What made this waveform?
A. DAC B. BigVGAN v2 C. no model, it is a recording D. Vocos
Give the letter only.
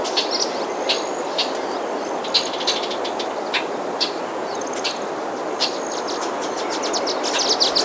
C